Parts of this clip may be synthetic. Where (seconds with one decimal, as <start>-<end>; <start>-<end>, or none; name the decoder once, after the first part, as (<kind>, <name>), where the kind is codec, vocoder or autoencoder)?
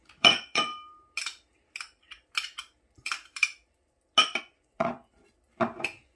0.0-0.7 (vocoder, Vocos); 4.4-5.1; 5.8-6.2